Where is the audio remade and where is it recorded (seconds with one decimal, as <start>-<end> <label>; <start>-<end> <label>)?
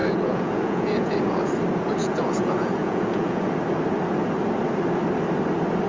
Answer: 0.0-1.5 remade; 1.5-2.0 recorded; 2.0-3.5 remade; 3.5-5.9 recorded